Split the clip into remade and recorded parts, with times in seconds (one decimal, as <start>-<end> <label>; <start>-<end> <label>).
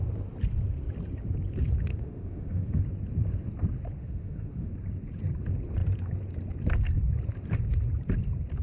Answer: 0.0-1.9 recorded; 1.9-2.8 remade; 2.8-4.0 recorded; 4.0-4.7 remade; 4.7-8.6 recorded